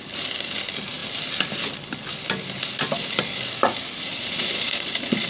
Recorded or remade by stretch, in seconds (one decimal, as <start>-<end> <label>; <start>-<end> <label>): 0.0-4.1 recorded; 4.1-5.3 remade